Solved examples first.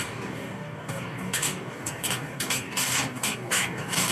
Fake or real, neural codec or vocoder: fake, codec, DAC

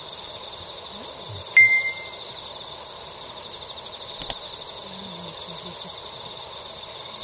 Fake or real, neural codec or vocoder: real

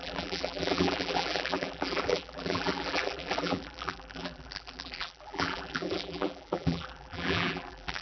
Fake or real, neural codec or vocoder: fake, vocoder, BigVGAN v2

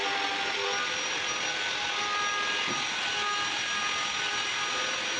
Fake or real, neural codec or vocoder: real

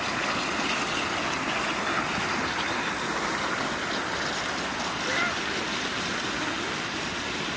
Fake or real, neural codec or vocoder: real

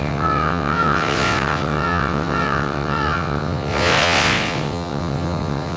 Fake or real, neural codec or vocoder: fake, vocoder, WaveNeXt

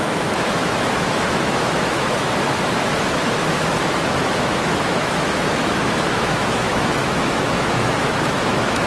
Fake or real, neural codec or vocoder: fake, autoencoder, DAC-VAE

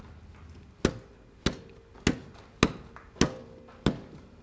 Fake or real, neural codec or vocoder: real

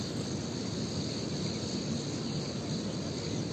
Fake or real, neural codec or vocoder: real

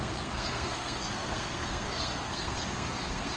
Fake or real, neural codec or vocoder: fake, codec, SNAC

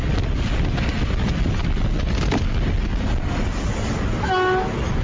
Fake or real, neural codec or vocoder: real